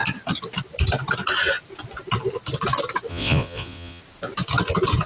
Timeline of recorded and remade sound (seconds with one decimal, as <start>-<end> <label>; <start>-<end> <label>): 0.0-3.1 recorded; 3.1-4.0 remade; 4.0-5.1 recorded